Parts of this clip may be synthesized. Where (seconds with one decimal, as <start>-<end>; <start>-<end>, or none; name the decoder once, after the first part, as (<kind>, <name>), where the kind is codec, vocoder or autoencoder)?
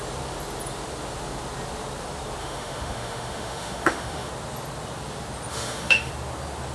2.4-4.3 (autoencoder, DAC-VAE); 5.5-6.1